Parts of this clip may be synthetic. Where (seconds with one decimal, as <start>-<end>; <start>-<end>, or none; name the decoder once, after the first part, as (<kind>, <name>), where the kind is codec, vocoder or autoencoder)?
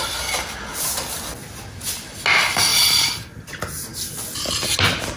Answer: 2.7-3.3 (vocoder, BigVGAN v2)